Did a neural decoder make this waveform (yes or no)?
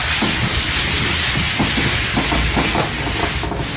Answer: no